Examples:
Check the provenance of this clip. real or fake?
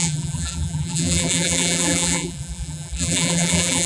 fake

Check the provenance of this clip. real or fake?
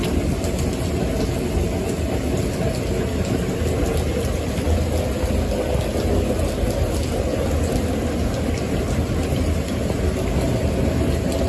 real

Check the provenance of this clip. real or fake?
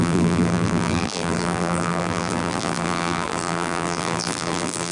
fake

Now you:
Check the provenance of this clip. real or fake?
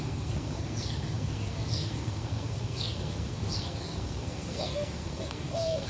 fake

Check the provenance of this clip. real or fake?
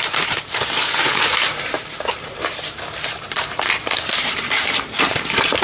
fake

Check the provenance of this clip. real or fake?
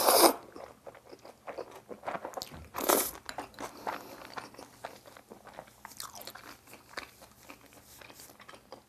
real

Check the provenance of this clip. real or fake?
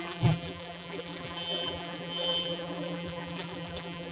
fake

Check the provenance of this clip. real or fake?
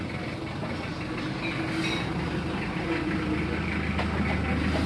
real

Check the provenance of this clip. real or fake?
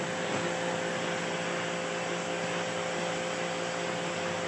real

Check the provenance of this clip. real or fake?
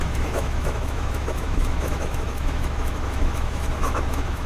fake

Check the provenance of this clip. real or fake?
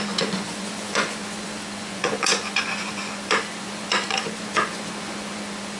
fake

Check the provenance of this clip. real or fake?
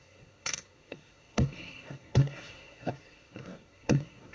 fake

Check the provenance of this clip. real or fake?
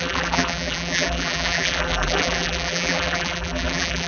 fake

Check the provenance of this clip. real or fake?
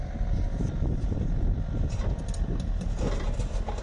real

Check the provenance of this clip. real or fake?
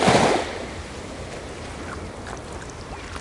fake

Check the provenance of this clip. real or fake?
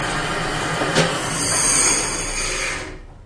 real